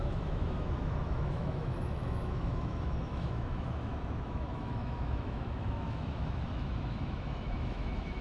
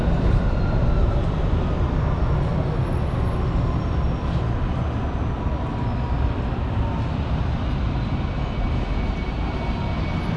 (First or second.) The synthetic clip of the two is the first